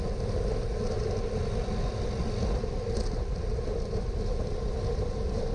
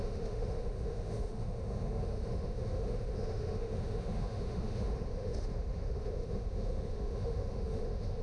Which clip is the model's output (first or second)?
second